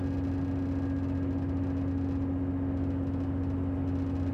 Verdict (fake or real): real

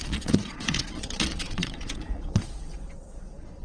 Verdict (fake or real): fake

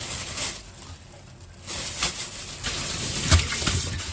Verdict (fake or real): real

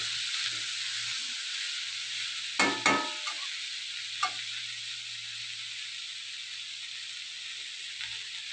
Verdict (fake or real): real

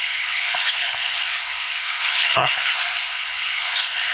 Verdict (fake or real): fake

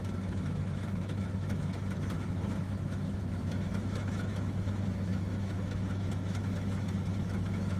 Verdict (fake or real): fake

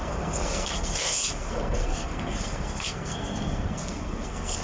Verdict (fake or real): fake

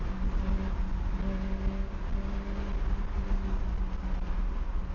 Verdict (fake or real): real